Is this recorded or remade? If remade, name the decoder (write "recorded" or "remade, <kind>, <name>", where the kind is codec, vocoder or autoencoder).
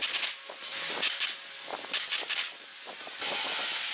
remade, vocoder, BigVGAN v2